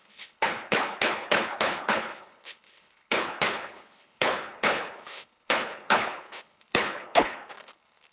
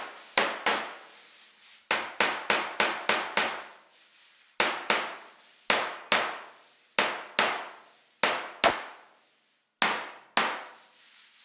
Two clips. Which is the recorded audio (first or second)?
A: second